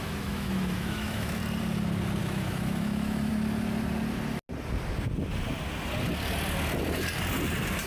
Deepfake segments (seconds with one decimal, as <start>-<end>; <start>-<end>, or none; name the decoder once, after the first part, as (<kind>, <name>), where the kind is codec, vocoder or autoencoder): 0.0-1.4 (autoencoder, DAC-VAE); 2.2-3.3